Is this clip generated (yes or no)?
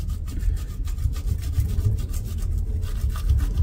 no